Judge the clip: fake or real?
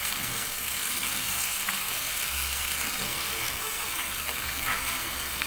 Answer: fake